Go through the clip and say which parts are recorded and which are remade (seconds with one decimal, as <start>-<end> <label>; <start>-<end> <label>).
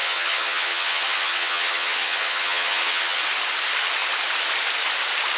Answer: 0.0-3.2 remade; 3.2-5.4 recorded